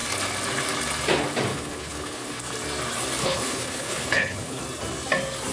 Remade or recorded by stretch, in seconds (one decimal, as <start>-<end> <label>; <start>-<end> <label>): 0.0-1.5 recorded; 1.5-2.4 remade; 2.4-3.2 recorded; 3.2-4.6 remade; 4.6-5.5 recorded